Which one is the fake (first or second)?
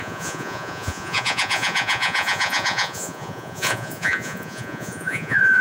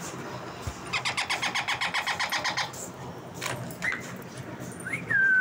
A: first